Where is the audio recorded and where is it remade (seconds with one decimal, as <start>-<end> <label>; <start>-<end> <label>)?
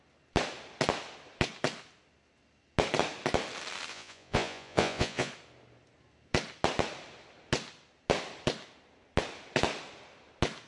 0.0-3.9 recorded; 3.9-5.3 remade; 5.3-10.7 recorded